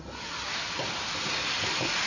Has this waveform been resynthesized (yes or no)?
no